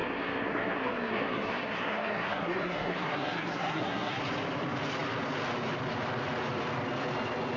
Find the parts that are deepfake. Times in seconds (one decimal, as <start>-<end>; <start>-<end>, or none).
0.0-4.2